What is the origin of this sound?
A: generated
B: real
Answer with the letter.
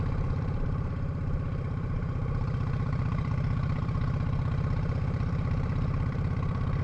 A